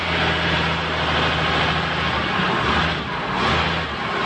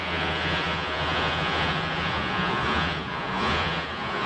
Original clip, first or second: first